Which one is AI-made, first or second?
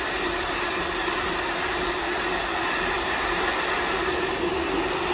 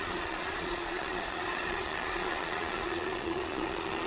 second